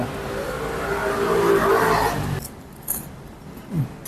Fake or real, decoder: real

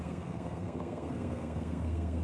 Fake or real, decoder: fake, codec, SNAC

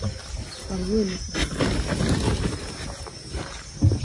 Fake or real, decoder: real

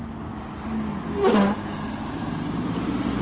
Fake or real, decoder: real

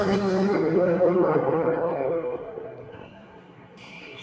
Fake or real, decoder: fake, codec, SNAC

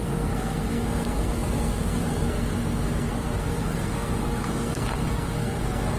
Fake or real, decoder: fake, codec, SNAC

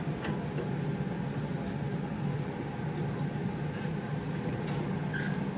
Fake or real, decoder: real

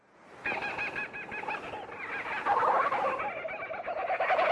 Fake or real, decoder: real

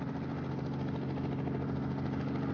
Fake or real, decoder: real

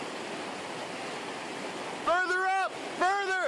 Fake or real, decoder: real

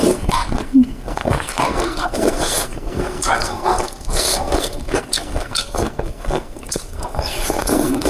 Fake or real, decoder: fake, codec, SNAC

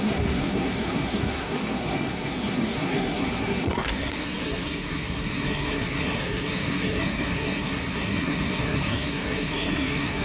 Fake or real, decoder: fake, codec, SNAC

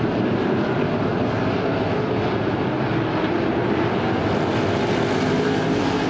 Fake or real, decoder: real